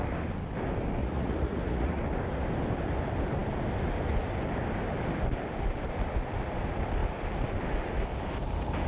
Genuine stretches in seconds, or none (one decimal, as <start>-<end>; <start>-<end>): 0.0-1.0; 2.0-8.9